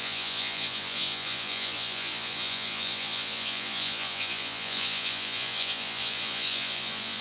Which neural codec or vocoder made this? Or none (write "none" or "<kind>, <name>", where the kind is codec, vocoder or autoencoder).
vocoder, Vocos